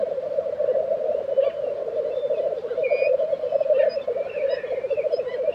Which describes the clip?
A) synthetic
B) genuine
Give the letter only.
B